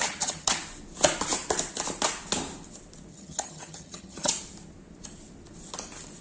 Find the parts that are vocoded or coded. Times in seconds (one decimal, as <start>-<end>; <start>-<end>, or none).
0.0-0.6; 3.1-4.3